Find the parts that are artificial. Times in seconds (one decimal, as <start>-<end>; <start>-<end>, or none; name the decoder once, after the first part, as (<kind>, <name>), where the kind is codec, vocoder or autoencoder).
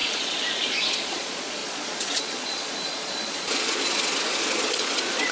0.0-5.3 (vocoder, Vocos)